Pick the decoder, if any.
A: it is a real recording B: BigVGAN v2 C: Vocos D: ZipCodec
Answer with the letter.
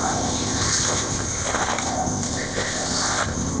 D